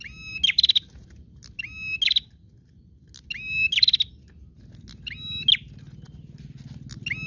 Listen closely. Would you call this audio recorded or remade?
recorded